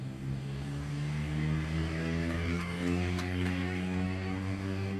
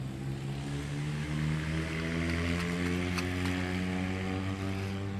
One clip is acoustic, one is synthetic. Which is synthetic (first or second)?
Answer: first